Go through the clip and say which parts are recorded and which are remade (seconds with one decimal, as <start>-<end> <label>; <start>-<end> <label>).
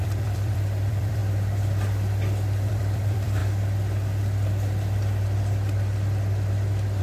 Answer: 0.0-1.2 remade; 1.2-2.7 recorded; 2.7-3.4 remade; 3.4-7.0 recorded